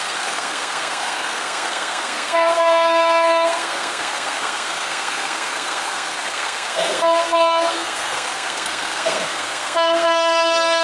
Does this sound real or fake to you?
fake